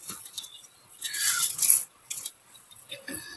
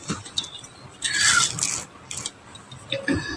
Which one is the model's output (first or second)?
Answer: first